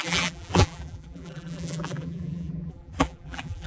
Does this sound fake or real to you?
fake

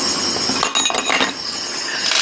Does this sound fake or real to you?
real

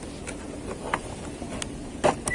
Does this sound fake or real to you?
real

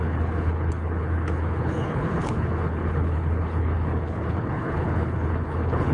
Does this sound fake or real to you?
fake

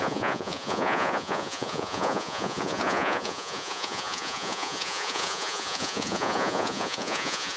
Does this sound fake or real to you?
fake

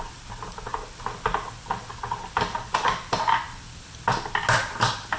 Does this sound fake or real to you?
real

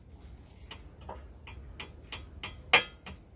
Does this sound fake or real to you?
real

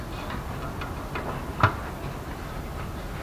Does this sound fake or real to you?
real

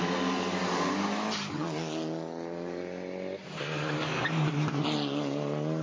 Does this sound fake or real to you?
real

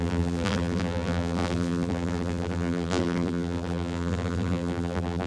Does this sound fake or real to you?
fake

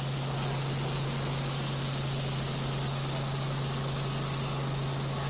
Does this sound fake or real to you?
real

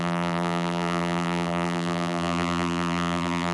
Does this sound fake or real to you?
fake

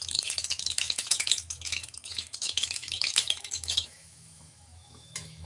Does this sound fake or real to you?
fake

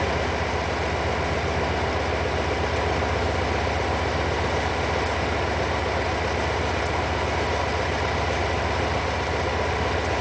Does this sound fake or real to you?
real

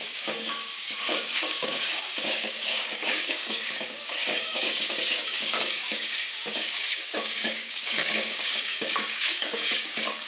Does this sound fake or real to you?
fake